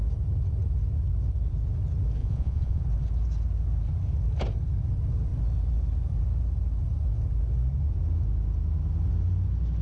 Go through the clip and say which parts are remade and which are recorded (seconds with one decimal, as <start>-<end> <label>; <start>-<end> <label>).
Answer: 0.0-2.2 recorded; 2.2-2.8 remade; 2.8-9.8 recorded